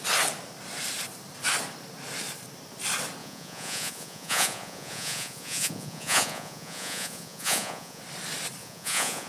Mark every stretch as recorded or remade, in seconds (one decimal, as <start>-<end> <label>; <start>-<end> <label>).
0.0-3.2 recorded; 3.2-8.0 remade; 8.0-8.6 recorded; 8.6-9.3 remade